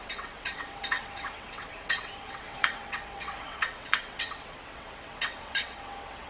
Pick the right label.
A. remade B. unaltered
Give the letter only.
A